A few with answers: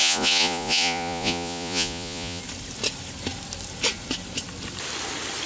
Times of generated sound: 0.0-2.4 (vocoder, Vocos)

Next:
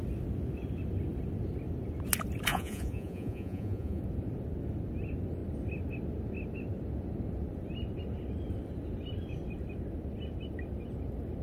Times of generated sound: 2.5-4.0 (vocoder, Vocos)